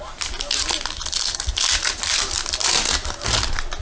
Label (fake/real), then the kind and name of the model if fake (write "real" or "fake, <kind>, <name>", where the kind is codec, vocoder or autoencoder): real